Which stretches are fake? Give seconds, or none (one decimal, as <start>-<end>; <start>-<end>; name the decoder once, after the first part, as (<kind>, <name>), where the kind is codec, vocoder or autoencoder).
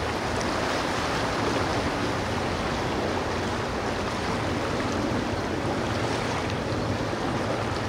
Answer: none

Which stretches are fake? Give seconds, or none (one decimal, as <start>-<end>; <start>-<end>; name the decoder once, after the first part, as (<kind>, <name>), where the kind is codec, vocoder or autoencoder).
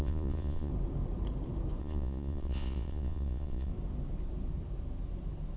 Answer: 0.0-0.7 (vocoder, Vocos); 1.8-3.7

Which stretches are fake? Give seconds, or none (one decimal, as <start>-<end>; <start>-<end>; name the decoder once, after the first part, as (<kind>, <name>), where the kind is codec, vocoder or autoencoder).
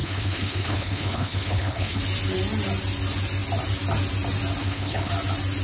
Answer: 0.0-2.0 (codec, HILCodec); 4.6-5.1